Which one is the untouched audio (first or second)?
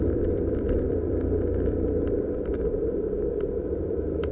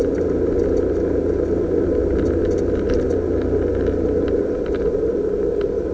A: second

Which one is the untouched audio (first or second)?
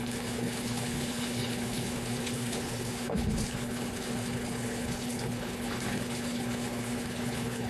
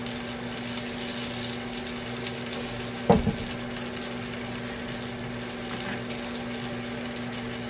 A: second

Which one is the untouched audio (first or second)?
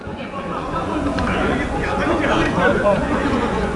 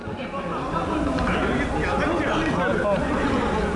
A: second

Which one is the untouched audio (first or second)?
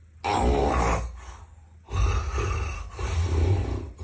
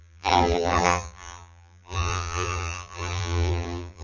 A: first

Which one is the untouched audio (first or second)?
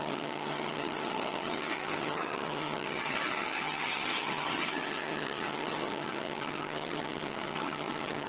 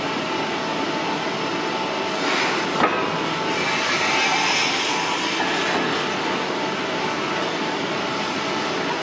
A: second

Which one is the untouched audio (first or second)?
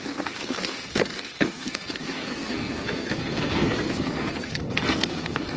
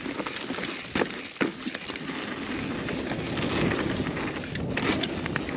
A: second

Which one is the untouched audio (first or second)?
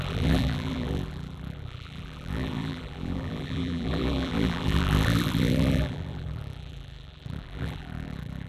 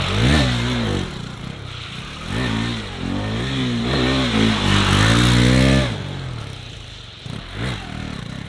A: second